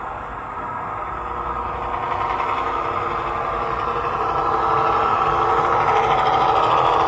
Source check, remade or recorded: recorded